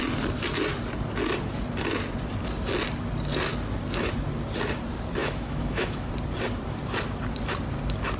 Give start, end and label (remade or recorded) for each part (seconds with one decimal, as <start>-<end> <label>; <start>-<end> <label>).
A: 0.0-5.2 recorded; 5.2-6.1 remade; 6.1-8.2 recorded

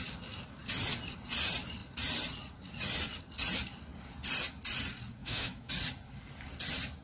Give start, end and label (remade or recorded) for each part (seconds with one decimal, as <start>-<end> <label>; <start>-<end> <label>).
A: 0.0-5.2 recorded; 5.2-5.7 remade; 5.7-7.0 recorded

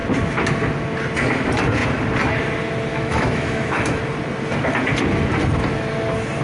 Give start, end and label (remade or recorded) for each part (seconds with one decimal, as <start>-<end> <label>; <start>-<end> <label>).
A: 0.0-2.9 recorded; 2.9-4.0 remade; 4.0-6.4 recorded